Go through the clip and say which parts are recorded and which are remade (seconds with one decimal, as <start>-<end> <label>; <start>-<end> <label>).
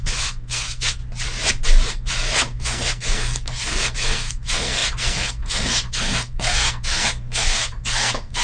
0.0-1.0 remade; 1.0-1.9 recorded; 1.9-8.4 remade